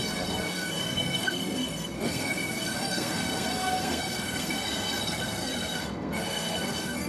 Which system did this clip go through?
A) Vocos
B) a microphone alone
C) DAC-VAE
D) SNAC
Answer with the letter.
D